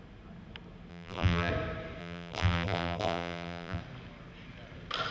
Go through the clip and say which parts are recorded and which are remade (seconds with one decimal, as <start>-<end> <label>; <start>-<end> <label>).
0.0-0.9 recorded; 0.9-1.5 remade; 1.5-2.0 recorded; 2.0-3.8 remade; 3.8-5.1 recorded